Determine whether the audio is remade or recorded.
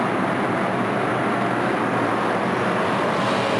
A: recorded